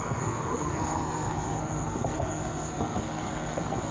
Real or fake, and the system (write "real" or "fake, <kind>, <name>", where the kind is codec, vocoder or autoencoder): fake, codec, SNAC